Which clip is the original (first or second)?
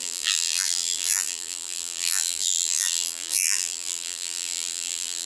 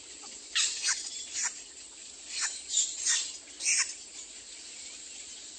second